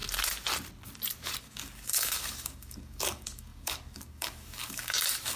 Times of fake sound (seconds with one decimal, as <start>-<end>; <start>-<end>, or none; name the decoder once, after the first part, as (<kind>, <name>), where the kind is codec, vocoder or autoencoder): 1.4-5.4 (codec, DAC)